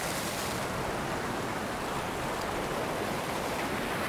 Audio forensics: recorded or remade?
recorded